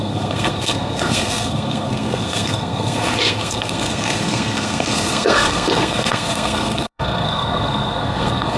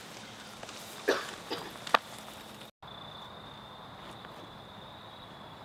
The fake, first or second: first